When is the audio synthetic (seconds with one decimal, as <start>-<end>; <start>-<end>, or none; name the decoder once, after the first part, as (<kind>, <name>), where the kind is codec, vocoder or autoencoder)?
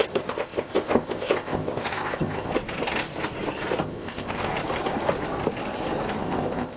0.0-2.5 (codec, ZipCodec); 3.8-4.5; 6.2-6.8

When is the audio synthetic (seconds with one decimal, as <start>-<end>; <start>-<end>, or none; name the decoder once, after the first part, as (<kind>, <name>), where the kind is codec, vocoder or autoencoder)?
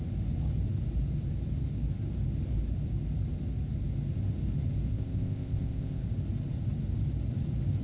4.9-6.0 (codec, ZipCodec)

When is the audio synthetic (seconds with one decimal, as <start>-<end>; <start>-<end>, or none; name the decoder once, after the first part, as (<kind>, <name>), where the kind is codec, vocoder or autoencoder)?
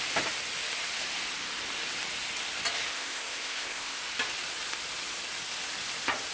2.9-4.0 (codec, ZipCodec)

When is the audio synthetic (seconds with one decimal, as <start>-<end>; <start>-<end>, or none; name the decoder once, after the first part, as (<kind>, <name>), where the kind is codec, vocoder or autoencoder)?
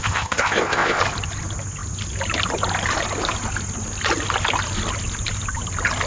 0.0-1.0 (codec, ZipCodec)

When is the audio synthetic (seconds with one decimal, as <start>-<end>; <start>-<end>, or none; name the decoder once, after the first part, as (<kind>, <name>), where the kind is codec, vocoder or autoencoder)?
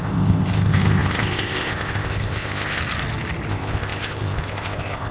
0.0-2.8 (codec, ZipCodec); 3.5-5.1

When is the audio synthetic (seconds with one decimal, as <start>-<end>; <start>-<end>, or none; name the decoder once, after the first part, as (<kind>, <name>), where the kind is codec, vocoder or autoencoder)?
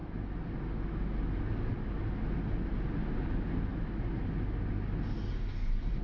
none